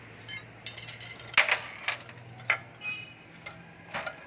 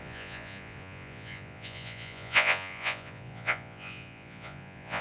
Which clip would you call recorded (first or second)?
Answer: first